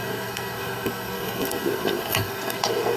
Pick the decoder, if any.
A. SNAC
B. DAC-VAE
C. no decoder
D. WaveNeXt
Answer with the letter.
A